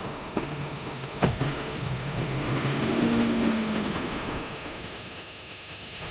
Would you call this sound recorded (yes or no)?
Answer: no